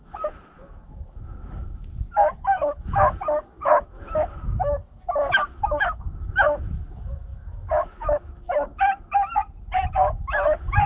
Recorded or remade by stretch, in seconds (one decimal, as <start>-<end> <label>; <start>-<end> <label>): 0.0-8.7 remade; 8.7-9.9 recorded; 9.9-10.9 remade